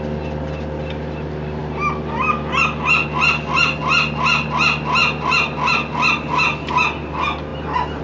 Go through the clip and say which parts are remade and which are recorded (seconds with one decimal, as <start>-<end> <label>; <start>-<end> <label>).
0.0-8.0 recorded